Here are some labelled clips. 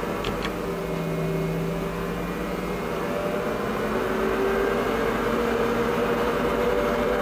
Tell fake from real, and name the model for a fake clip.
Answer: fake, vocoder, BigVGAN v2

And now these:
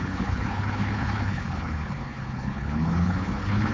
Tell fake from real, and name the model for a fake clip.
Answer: fake, codec, HILCodec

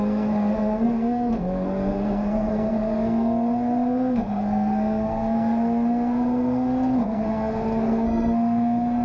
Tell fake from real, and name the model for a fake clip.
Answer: fake, codec, SNAC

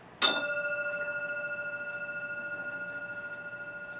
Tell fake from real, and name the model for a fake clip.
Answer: real